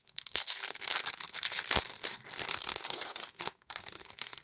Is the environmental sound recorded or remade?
remade